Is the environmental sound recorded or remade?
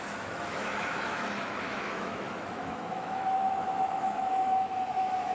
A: remade